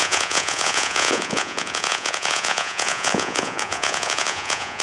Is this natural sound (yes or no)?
no